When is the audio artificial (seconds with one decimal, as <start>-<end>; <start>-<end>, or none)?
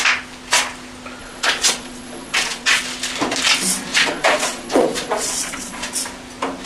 1.2-2.8; 3.9-5.9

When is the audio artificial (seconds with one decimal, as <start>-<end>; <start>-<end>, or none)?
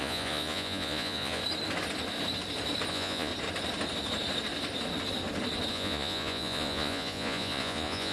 0.0-1.4; 2.9-3.3; 5.7-8.1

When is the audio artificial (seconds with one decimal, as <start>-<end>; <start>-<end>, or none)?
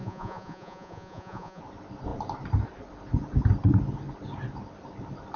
0.0-1.6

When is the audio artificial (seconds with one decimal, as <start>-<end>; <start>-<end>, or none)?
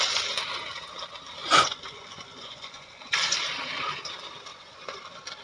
1.4-3.4; 4.5-5.0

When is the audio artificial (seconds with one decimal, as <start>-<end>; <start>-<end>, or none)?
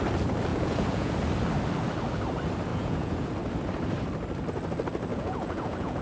0.5-1.1; 2.7-3.3; 5.1-6.0